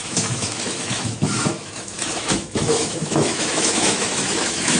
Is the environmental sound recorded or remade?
remade